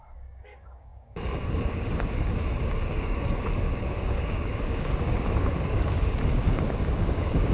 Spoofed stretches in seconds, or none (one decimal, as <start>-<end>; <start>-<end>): 0.0-7.5